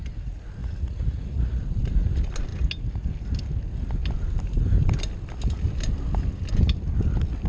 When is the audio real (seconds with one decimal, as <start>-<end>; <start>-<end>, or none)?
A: 0.0-0.6; 1.6-7.5